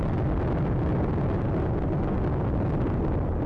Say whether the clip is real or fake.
real